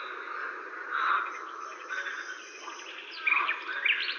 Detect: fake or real real